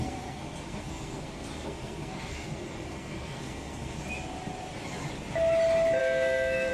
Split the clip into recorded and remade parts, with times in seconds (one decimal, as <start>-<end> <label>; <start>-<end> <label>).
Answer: 0.0-4.0 remade; 4.0-6.0 recorded; 6.0-6.7 remade